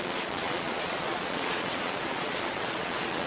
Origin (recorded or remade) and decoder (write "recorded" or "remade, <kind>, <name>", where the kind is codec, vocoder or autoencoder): remade, vocoder, Vocos